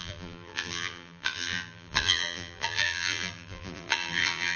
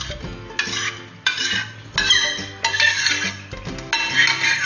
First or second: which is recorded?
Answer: second